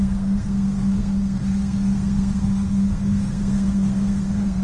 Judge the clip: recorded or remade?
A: remade